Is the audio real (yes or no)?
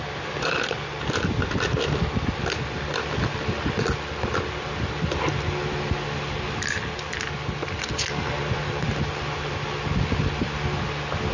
yes